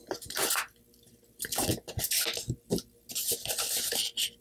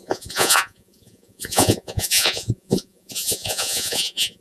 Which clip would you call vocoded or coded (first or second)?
second